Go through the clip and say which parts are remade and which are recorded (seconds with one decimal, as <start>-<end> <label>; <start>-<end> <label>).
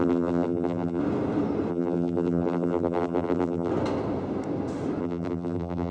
0.0-1.0 remade; 1.0-1.7 recorded; 1.7-3.7 remade; 3.7-5.0 recorded; 5.0-5.9 remade